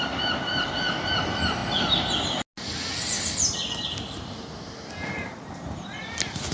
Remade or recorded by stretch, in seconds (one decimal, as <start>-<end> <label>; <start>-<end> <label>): 0.0-6.5 recorded